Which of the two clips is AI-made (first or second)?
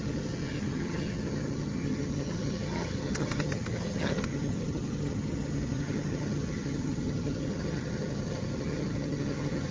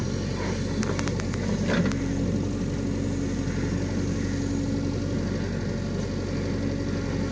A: first